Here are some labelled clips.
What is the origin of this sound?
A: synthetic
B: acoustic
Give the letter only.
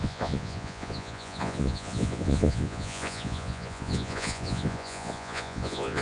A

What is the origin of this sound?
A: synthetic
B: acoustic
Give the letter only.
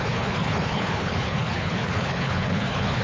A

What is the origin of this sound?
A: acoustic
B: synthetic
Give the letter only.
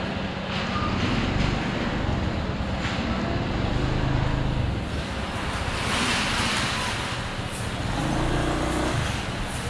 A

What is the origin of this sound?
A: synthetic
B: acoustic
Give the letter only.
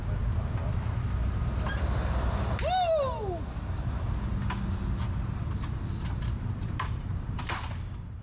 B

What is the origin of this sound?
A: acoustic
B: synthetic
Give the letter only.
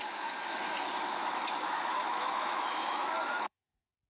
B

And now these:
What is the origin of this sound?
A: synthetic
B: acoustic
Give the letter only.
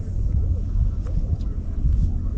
A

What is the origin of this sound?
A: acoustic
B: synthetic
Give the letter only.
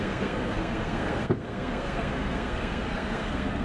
B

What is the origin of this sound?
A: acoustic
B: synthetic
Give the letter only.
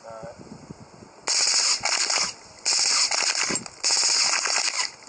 A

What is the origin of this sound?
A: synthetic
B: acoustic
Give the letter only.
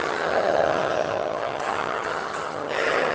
A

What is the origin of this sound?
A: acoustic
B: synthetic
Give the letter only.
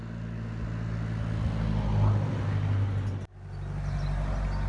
A